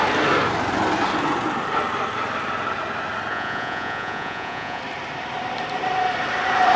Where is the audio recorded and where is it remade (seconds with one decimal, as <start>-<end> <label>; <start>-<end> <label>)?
0.0-3.3 recorded; 3.3-4.8 remade; 4.8-6.8 recorded